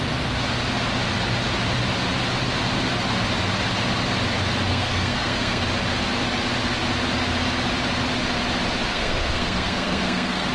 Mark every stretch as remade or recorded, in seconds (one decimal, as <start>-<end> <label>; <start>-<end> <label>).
0.0-4.7 recorded; 4.7-5.6 remade; 5.6-8.9 recorded; 8.9-10.5 remade